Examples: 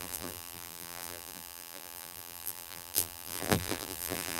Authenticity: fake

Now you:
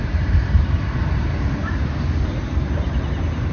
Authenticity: fake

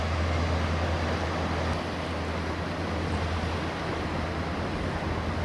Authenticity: real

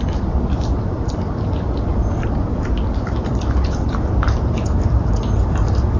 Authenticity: fake